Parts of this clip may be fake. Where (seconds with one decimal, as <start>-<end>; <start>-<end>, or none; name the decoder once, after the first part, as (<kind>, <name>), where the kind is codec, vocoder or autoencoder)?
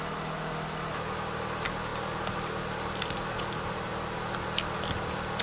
none